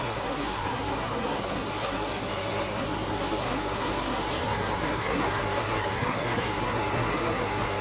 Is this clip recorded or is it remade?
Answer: remade